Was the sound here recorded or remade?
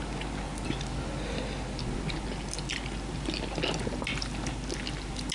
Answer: recorded